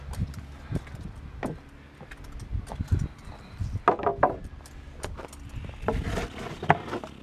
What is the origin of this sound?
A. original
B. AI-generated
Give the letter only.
A